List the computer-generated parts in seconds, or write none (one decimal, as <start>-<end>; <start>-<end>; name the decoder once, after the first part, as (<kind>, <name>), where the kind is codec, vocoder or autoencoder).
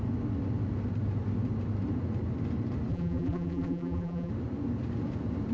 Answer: 2.9-4.3 (vocoder, BigVGAN v2)